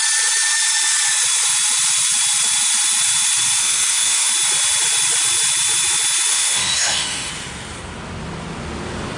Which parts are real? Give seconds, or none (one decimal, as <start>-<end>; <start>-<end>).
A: 0.0-3.6; 4.3-6.3; 7.3-9.2